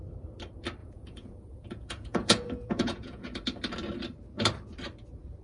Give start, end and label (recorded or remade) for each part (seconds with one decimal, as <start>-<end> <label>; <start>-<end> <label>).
0.0-0.8 recorded; 0.8-3.3 remade; 3.3-5.4 recorded